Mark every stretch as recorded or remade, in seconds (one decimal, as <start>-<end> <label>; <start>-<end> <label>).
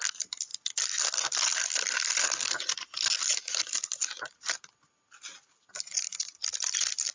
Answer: 0.0-7.1 recorded